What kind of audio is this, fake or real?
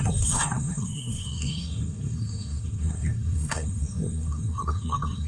fake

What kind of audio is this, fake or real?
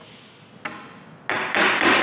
real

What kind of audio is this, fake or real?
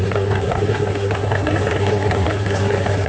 fake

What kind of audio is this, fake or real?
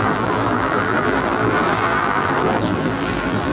fake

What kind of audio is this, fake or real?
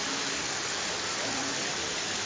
real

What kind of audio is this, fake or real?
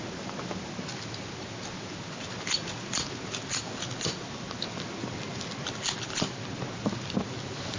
real